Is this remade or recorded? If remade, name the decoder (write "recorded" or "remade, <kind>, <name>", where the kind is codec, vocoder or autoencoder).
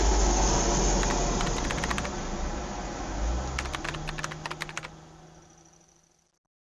recorded